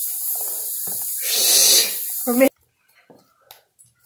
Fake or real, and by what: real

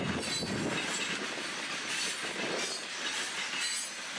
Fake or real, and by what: real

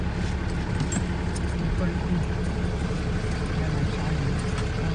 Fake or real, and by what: real